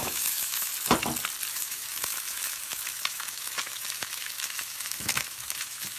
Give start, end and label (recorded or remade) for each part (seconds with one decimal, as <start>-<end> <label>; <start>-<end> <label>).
0.0-0.7 remade; 0.7-1.5 recorded; 1.5-6.0 remade